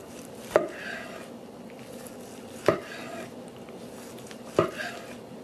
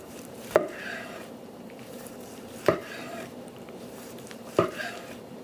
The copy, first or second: second